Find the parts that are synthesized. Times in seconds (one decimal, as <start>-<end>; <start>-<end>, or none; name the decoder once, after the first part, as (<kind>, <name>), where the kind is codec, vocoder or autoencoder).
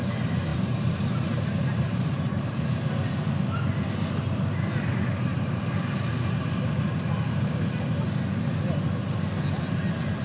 0.5-2.6 (vocoder, BigVGAN v2); 5.3-6.5